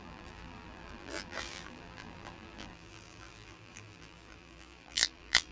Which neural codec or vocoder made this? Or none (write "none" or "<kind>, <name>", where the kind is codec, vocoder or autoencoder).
vocoder, BigVGAN v2